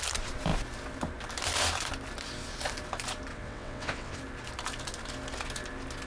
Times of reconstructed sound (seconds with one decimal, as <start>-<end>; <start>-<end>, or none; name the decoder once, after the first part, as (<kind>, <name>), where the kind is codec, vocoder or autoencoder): 3.3-4.2 (vocoder, WaveNeXt)